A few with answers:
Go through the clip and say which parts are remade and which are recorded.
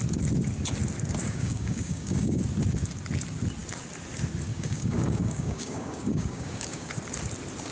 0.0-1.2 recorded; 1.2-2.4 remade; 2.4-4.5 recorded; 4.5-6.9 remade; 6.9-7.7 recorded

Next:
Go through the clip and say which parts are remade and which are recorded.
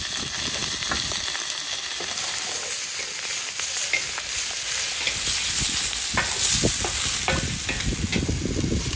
0.0-9.0 recorded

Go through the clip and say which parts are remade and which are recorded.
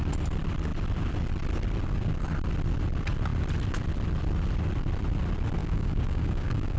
0.0-5.6 recorded; 5.6-6.8 remade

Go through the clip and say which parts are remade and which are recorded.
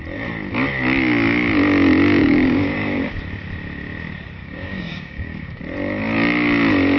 0.0-2.2 recorded; 2.2-3.1 remade; 3.1-4.4 recorded; 4.4-5.6 remade; 5.6-7.0 recorded